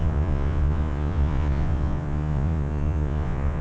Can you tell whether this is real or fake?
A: fake